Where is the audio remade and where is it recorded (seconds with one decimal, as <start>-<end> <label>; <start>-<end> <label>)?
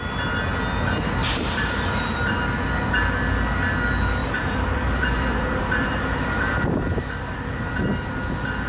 0.0-1.2 recorded; 1.2-2.3 remade; 2.3-4.2 recorded; 4.2-7.2 remade; 7.2-8.7 recorded